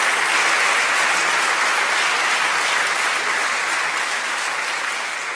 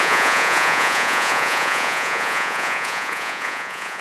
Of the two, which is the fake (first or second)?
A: second